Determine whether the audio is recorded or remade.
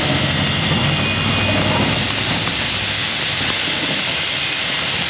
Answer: recorded